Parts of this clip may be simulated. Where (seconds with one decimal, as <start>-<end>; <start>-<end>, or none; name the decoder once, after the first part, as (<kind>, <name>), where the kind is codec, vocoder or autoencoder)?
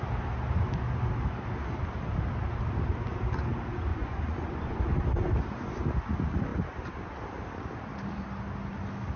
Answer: 3.9-4.8 (vocoder, Vocos)